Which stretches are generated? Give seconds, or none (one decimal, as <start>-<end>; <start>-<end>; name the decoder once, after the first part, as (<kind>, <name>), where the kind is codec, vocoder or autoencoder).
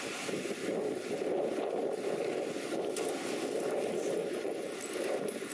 4.2-4.7 (vocoder, Vocos)